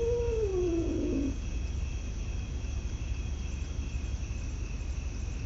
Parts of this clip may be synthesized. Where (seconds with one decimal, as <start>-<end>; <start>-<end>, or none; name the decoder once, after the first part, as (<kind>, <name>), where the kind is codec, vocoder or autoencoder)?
0.5-1.7 (vocoder, Vocos)